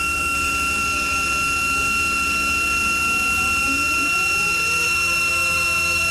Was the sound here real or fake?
fake